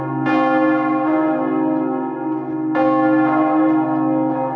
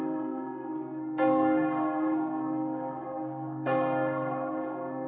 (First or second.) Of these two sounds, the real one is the first